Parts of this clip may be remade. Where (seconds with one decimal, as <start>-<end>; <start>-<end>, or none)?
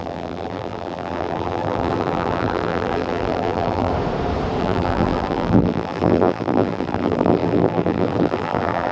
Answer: 0.0-3.9; 4.6-8.9